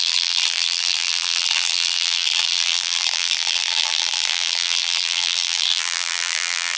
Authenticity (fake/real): fake